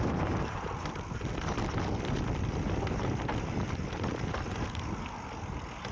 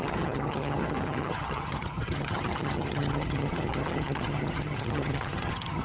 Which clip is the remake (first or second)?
second